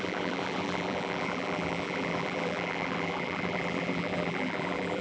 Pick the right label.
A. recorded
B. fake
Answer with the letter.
B